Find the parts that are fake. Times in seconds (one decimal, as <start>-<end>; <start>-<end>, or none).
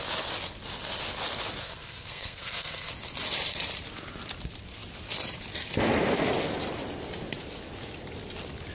1.6-2.9